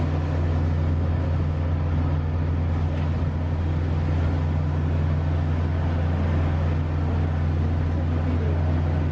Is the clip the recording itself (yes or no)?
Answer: yes